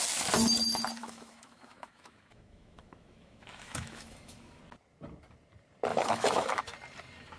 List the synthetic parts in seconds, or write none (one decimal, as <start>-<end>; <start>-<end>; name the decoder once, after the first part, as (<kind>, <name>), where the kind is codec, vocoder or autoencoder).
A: 1.0-4.6 (autoencoder, DAC-VAE); 5.9-6.6